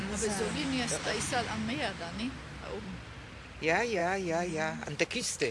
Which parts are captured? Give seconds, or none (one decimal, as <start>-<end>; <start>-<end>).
0.0-4.0; 4.5-5.5